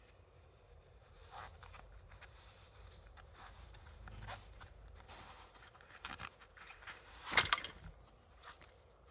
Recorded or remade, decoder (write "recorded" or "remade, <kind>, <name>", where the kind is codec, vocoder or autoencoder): remade, vocoder, BigVGAN v2